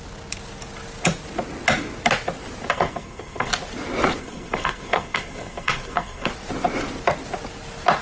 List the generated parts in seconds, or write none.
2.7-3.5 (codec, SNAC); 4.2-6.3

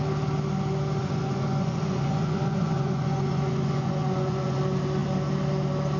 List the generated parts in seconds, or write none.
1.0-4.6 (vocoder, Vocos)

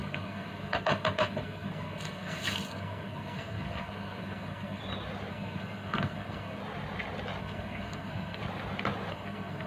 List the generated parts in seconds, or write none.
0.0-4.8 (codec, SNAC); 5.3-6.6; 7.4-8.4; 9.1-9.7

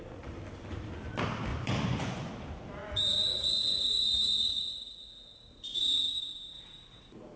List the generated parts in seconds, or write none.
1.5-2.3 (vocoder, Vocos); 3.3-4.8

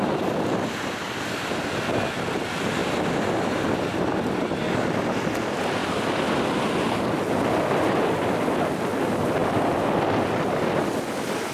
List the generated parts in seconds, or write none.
2.8-4.5 (vocoder, BigVGAN v2); 5.8-6.6; 9.4-10.4